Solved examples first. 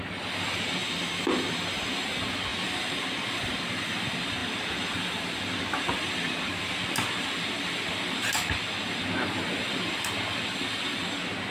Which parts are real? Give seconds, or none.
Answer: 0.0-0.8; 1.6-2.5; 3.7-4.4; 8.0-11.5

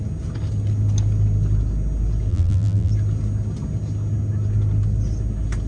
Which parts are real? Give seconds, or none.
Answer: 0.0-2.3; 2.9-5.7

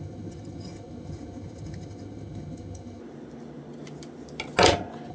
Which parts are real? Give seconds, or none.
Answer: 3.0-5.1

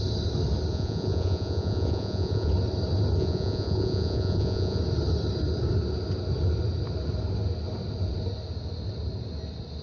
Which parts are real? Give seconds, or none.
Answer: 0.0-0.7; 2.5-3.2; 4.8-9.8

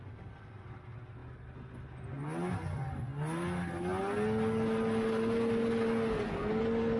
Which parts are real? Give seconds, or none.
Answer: 0.0-7.0